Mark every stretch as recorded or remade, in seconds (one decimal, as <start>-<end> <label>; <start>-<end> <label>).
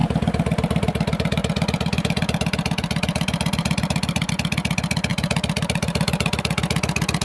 0.0-4.3 remade; 4.3-5.1 recorded; 5.1-6.4 remade; 6.4-7.2 recorded